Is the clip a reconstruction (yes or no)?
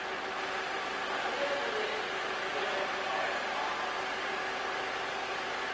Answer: no